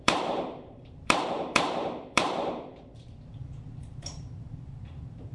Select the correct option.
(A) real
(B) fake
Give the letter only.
B